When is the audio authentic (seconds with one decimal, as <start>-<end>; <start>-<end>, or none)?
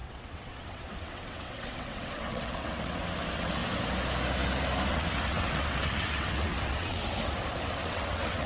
3.6-4.9; 7.0-7.8